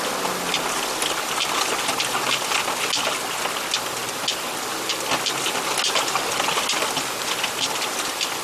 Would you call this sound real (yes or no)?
yes